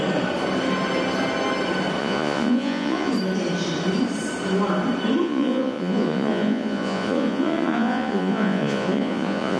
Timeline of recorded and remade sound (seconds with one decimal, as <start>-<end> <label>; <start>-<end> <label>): 0.0-2.0 recorded; 2.0-3.1 remade; 3.1-5.2 recorded; 5.2-9.6 remade